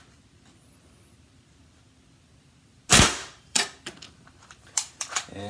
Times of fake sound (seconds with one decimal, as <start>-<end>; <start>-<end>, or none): 2.9-5.5